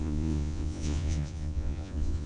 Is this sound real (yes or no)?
no